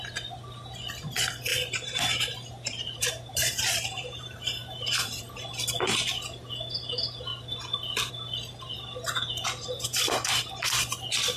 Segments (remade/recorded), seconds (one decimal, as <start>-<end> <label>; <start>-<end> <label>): 0.0-1.5 recorded; 1.5-5.2 remade; 5.2-11.4 recorded